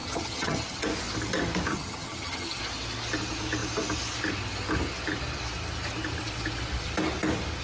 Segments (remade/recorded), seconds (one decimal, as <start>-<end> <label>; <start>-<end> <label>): 0.0-0.8 remade; 0.8-1.7 recorded; 1.7-2.6 remade; 2.6-7.6 recorded